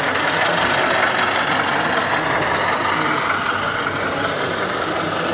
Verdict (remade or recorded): recorded